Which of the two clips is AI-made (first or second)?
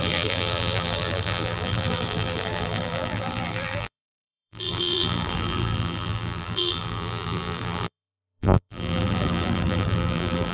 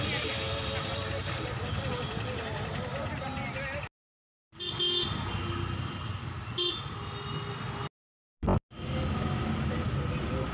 first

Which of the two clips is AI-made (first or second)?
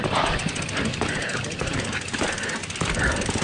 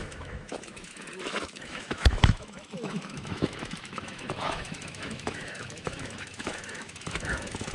second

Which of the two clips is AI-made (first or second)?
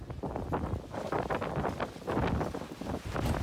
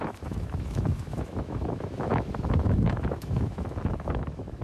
second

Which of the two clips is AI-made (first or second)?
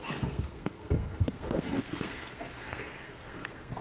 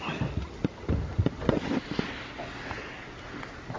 first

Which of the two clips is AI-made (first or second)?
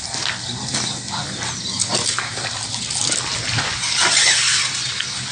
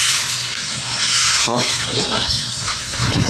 second